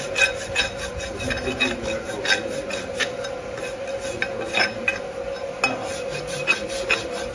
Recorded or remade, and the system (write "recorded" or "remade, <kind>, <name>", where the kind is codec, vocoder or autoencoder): recorded